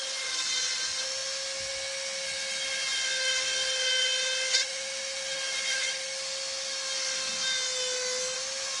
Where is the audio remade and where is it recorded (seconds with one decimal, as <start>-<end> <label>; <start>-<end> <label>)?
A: 0.0-8.8 recorded